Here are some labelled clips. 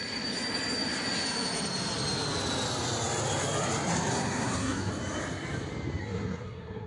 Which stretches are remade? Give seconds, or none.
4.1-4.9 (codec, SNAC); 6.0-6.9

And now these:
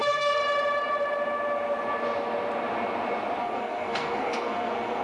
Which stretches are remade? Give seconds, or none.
0.0-0.4 (codec, SNAC); 3.4-5.0

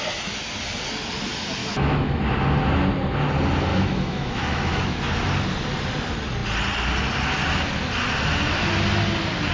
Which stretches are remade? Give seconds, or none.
1.6-2.2 (autoencoder, DAC-VAE); 3.7-5.0

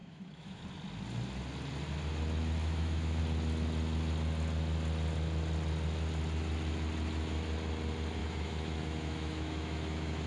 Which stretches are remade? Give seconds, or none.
0.0-0.6 (autoencoder, DAC-VAE); 2.6-3.2; 8.2-10.3

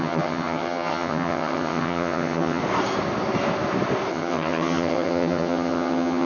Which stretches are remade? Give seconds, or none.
0.0-2.6 (vocoder, HiFi-GAN); 4.1-6.3